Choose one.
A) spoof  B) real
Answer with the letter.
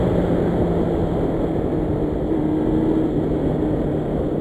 B